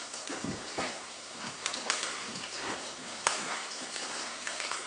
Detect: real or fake fake